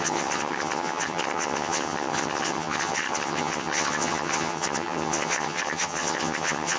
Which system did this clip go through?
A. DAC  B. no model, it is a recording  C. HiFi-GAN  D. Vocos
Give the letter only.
C